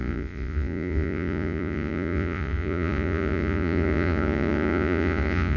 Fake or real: fake